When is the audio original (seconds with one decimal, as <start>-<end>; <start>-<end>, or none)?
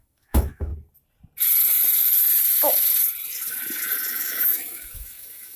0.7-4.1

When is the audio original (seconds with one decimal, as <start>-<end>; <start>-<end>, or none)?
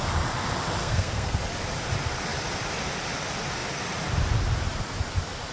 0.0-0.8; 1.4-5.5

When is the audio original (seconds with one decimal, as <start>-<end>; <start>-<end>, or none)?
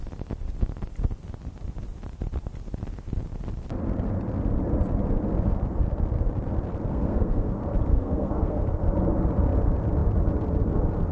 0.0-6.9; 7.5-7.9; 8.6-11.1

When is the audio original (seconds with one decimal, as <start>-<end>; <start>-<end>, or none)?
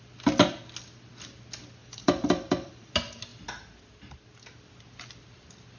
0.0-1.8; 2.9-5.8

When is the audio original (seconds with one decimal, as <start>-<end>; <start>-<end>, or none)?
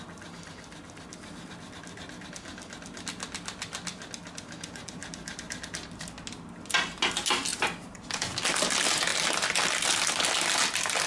0.0-11.1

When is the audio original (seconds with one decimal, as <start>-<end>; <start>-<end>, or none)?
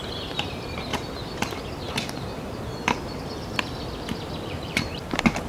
0.9-1.4; 2.3-4.5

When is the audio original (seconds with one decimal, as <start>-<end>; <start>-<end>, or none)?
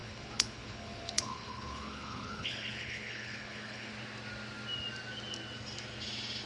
3.9-6.5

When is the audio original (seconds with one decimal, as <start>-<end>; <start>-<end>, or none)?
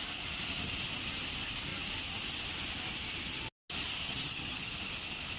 0.0-4.0; 4.7-5.4